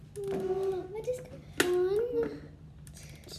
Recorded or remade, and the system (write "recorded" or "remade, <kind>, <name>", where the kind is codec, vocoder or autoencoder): recorded